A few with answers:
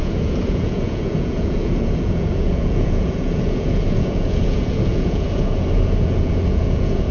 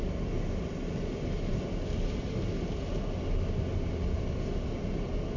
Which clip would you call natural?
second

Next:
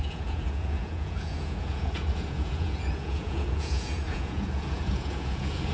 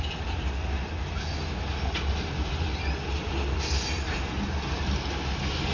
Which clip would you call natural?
second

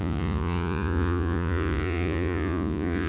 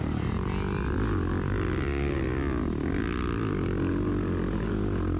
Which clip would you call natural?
second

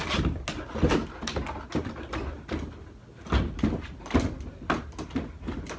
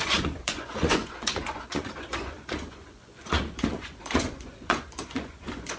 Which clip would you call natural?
first